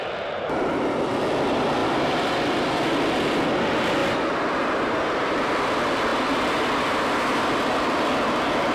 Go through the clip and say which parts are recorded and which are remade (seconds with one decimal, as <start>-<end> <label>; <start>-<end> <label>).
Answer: 0.0-4.0 recorded; 4.0-5.4 remade; 5.4-8.7 recorded